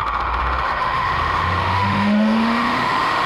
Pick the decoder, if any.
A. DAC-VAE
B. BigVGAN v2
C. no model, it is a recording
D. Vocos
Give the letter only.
A